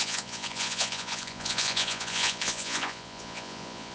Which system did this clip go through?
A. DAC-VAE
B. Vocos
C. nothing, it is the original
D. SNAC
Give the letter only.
B